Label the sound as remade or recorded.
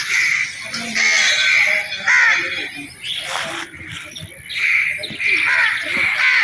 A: recorded